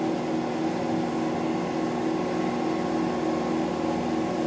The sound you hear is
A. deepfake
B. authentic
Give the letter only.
B